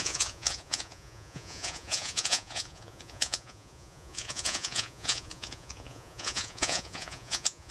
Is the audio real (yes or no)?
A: no